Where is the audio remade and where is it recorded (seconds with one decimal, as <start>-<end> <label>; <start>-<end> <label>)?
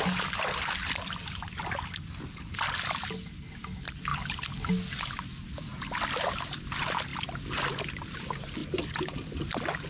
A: 0.0-9.9 recorded